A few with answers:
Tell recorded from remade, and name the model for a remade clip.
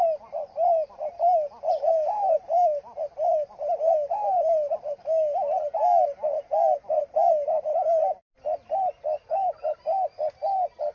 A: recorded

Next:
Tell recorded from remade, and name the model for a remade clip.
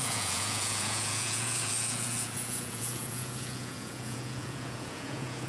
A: remade, vocoder, Vocos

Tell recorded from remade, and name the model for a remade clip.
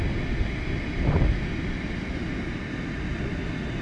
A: recorded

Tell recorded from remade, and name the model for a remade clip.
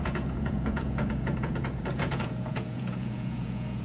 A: remade, vocoder, Vocos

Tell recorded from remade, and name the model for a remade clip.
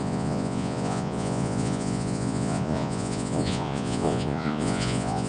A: remade, vocoder, Vocos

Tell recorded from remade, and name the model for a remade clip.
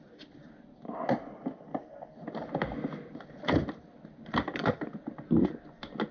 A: recorded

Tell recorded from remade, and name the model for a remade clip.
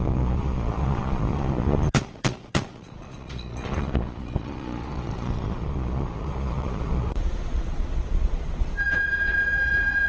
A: remade, vocoder, Vocos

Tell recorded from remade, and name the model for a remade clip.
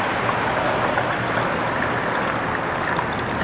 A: recorded